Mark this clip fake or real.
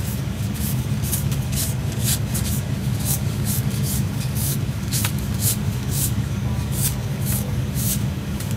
fake